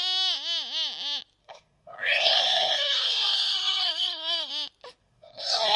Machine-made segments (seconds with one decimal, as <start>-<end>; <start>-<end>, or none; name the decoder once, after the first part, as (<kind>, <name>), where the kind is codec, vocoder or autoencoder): 1.4-4.5 (codec, SNAC); 5.0-5.8